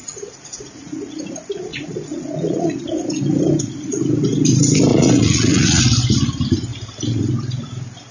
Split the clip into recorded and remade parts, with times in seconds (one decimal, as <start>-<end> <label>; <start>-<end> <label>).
0.0-1.1 remade; 1.1-1.7 recorded; 1.7-2.8 remade; 2.8-4.9 recorded; 4.9-5.8 remade; 5.8-8.1 recorded